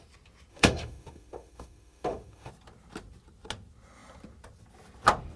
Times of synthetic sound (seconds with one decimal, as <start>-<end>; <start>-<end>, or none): 0.5-2.5